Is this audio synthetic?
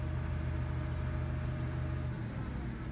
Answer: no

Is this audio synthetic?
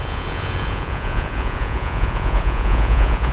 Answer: yes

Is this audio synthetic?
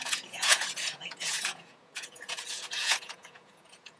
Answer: yes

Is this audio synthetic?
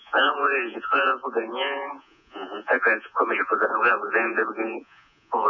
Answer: yes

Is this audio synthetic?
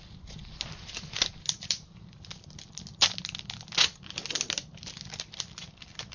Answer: no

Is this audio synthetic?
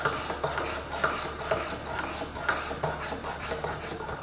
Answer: no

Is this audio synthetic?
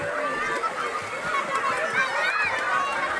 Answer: no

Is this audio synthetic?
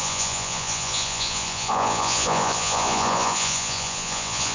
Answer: yes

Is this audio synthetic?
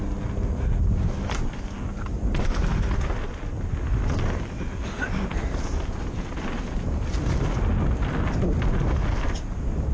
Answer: no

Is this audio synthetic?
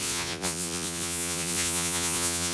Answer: yes